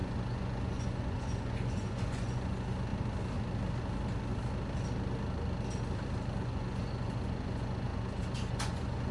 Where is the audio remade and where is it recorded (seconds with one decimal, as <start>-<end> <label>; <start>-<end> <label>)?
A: 0.0-2.9 remade; 2.9-6.4 recorded; 6.4-9.1 remade